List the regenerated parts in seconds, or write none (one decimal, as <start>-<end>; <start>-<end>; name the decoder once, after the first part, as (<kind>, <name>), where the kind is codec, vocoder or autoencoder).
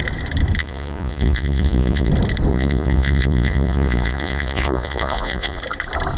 0.6-2.1 (vocoder, Vocos); 2.5-5.6